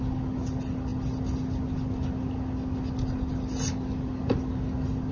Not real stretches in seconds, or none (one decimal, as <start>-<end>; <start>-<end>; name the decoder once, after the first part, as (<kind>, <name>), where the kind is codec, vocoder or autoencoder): none